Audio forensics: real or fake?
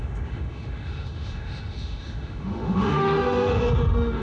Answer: fake